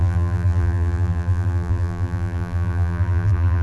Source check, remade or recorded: remade